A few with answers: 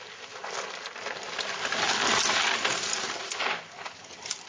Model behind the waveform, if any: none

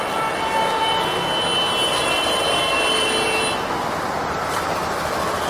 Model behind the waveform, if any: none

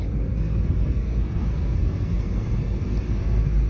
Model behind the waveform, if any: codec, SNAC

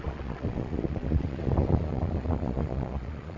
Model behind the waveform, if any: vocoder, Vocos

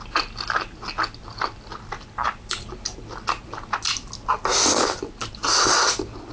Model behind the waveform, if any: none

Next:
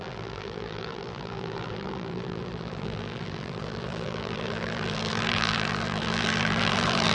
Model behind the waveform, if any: vocoder, BigVGAN v2